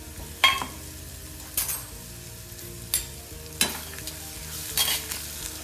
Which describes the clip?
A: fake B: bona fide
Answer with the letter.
B